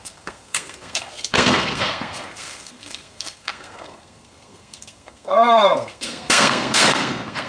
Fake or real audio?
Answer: fake